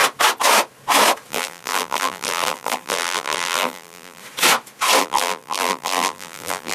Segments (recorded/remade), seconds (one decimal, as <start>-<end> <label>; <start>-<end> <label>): 0.0-1.3 recorded; 1.3-4.2 remade; 4.2-5.0 recorded; 5.0-6.7 remade